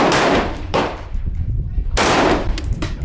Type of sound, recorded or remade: remade